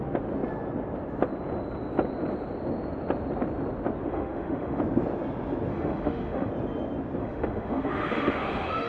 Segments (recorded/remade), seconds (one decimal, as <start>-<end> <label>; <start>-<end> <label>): 0.0-4.1 recorded; 4.1-4.8 remade; 4.8-5.7 recorded; 5.7-6.5 remade; 6.5-7.2 recorded; 7.2-8.9 remade